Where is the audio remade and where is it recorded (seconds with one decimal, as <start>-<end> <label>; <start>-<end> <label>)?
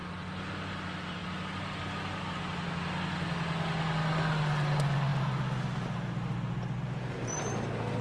0.0-8.0 recorded